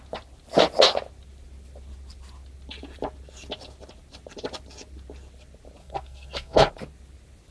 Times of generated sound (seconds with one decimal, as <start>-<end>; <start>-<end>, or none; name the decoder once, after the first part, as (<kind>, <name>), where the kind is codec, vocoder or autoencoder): 5.8-6.7 (codec, SNAC)

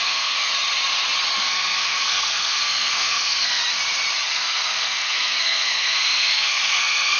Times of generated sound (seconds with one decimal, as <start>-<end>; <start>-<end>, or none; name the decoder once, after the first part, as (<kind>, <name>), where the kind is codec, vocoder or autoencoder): 0.0-0.5 (codec, SNAC); 1.4-3.6; 4.3-7.2

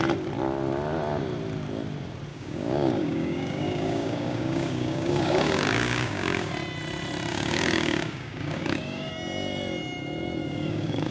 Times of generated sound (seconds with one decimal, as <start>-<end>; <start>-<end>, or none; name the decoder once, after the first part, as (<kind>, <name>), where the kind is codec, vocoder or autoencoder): 2.3-6.5 (codec, DAC); 7.3-9.1; 10.4-11.1

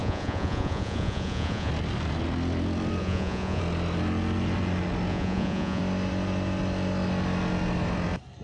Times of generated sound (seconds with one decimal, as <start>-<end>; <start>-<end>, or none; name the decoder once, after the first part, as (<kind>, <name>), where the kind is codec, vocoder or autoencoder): 0.0-1.7 (vocoder, Vocos); 3.0-3.6; 5.1-5.8

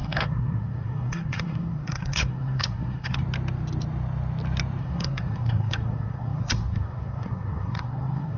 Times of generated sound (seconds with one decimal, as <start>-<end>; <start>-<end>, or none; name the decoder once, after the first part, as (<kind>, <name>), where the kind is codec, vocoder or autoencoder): 0.0-3.2 (codec, SNAC); 4.8-8.4

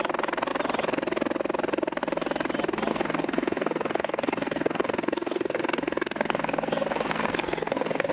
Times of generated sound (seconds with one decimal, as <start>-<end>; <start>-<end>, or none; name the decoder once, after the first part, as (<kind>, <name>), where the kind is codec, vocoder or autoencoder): 2.9-8.1 (codec, SNAC)

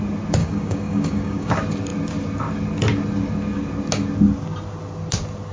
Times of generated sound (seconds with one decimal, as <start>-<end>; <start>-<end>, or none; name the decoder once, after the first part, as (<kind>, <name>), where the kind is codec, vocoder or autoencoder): 0.4-1.5 (codec, DAC)